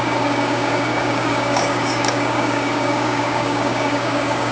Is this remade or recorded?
remade